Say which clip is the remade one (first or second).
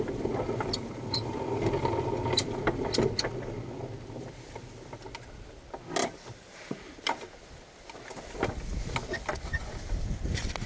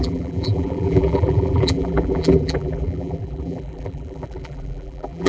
second